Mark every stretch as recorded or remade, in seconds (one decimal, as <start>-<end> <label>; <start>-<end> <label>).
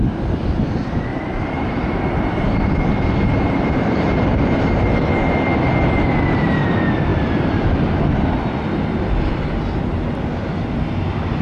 0.0-1.1 recorded; 1.1-4.9 remade; 4.9-7.1 recorded; 7.1-8.2 remade; 8.2-11.4 recorded